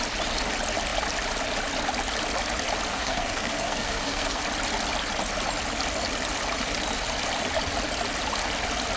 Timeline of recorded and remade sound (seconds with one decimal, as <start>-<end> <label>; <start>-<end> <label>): 0.0-2.9 recorded; 2.9-4.4 remade; 4.4-9.0 recorded